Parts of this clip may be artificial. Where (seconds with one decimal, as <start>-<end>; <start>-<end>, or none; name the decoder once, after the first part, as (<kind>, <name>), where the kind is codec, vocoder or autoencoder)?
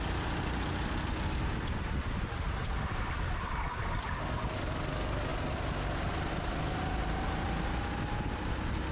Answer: none